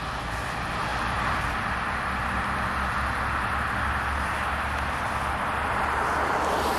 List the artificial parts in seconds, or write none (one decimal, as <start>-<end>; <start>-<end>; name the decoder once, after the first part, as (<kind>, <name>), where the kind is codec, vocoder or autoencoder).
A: none